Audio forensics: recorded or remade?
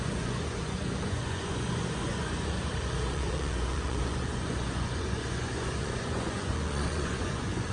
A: remade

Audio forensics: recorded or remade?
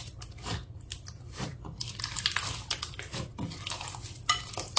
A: recorded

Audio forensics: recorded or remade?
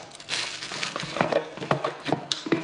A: remade